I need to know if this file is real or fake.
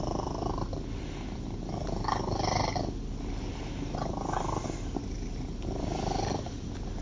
real